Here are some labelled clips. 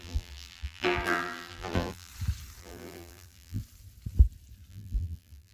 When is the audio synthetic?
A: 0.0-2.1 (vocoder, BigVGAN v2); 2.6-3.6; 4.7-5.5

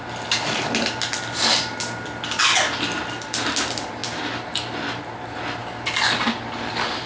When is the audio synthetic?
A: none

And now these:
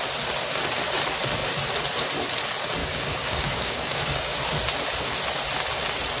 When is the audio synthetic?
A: 2.8-4.4 (codec, DAC)

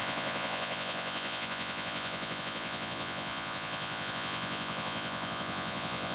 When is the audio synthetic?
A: 0.0-6.1 (vocoder, Vocos)

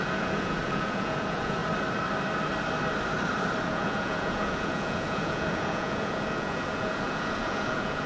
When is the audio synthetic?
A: 0.0-1.6 (vocoder, Vocos); 3.6-8.1